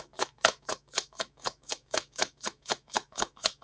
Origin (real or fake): fake